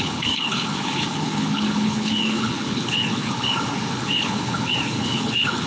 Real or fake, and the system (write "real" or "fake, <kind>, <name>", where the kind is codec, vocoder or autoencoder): fake, codec, HILCodec